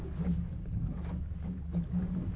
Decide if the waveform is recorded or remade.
remade